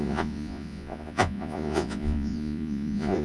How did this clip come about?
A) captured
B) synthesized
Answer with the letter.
B